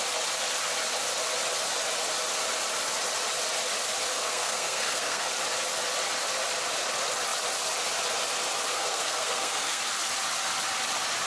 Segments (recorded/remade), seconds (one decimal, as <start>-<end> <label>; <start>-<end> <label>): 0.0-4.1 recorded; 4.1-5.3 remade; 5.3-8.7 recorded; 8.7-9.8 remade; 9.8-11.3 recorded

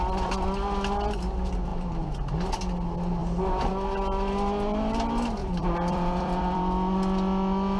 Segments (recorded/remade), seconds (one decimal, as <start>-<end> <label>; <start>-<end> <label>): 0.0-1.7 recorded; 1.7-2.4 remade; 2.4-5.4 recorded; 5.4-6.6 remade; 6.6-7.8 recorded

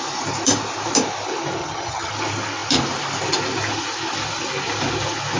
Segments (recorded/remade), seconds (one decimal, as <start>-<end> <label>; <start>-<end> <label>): 0.0-1.6 recorded; 1.6-2.1 remade; 2.1-5.4 recorded

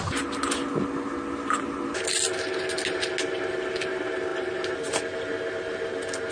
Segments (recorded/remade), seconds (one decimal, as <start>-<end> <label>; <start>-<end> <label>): 0.0-6.3 recorded

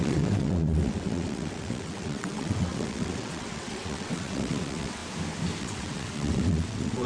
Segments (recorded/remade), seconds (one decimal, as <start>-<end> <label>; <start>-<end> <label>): 0.0-5.0 remade; 5.0-5.6 recorded; 5.6-7.1 remade

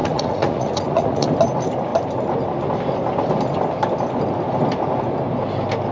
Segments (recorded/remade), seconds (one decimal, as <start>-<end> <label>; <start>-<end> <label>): 0.0-1.3 remade; 1.3-5.9 recorded